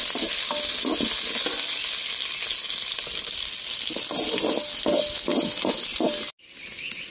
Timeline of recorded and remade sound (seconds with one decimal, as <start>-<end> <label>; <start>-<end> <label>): 0.0-7.1 recorded